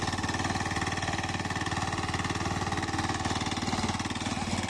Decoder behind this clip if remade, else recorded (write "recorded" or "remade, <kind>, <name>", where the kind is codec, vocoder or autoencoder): recorded